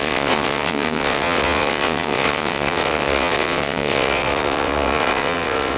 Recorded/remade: remade